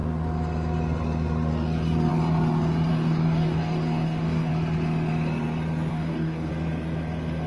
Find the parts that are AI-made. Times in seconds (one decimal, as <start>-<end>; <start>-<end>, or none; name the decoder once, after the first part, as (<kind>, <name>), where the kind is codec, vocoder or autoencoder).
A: 2.9-4.5 (codec, DAC); 5.9-6.5